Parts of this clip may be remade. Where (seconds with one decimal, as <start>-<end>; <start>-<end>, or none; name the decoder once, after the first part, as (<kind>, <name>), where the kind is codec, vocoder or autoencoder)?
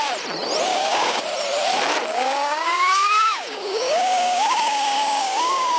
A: 0.7-1.2 (codec, DAC); 2.1-5.8